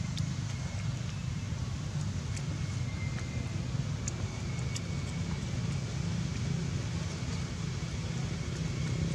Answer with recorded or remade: recorded